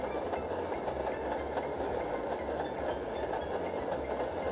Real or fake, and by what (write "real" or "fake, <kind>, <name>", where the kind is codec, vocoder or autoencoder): real